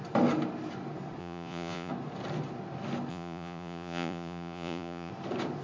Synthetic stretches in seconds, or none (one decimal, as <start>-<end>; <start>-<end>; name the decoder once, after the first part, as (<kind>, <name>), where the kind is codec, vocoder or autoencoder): 1.2-1.9 (vocoder, Vocos); 3.1-5.1